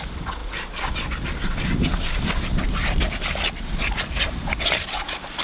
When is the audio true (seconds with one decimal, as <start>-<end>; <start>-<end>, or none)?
0.0-5.4